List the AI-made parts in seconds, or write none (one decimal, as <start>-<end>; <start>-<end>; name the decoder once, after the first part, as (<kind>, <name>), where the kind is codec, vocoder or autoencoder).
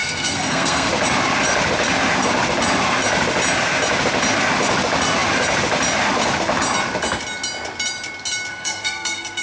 0.0-0.9 (codec, SNAC); 8.5-9.4